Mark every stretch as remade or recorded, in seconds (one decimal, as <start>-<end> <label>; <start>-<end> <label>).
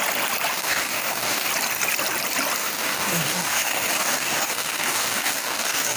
0.0-0.5 recorded; 0.5-1.5 remade; 1.5-2.6 recorded; 2.6-6.0 remade